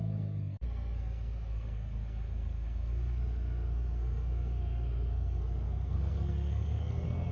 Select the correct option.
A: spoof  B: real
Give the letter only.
A